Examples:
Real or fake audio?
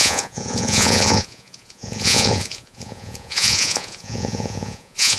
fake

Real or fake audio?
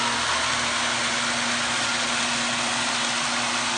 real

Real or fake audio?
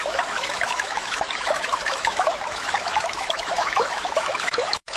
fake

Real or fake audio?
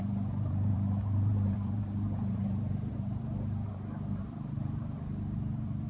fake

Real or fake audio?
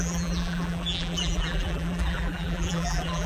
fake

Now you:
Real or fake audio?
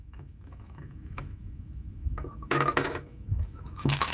fake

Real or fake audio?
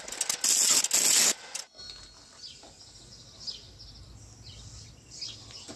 real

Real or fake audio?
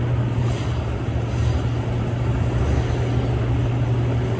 real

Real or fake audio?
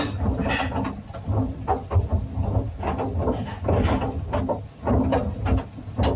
real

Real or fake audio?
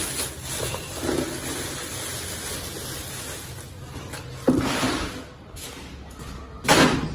real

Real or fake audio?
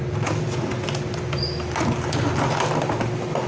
real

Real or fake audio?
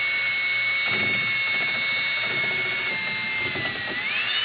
real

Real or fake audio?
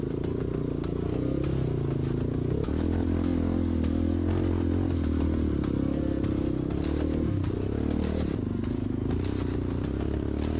real